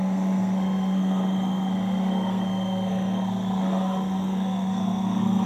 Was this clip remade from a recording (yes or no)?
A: yes